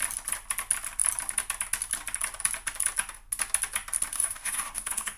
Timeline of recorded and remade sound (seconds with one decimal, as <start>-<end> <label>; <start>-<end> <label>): 0.0-4.1 recorded; 4.1-5.2 remade